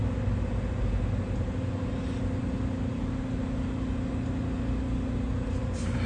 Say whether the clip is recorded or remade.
recorded